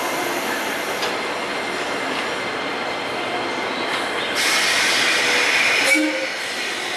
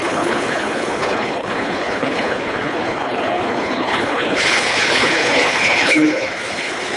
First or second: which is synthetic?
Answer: second